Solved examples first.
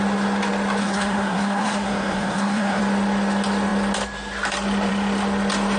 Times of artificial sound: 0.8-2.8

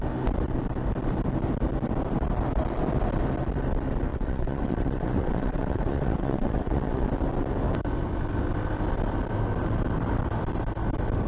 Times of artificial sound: 4.1-7.1

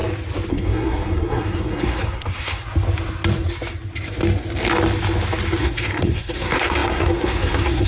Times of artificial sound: 0.5-2.6; 5.6-7.9

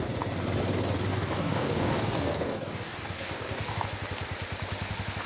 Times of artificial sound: 1.1-3.8

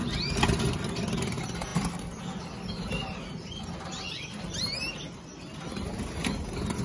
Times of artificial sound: none

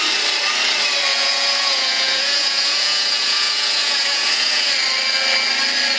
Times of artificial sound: 1.1-4.7

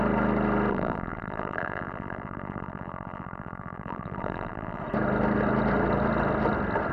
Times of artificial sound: 0.7-4.8